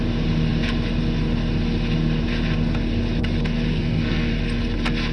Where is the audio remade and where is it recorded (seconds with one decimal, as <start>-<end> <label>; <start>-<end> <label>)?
0.0-3.7 recorded; 3.7-4.3 remade; 4.3-5.1 recorded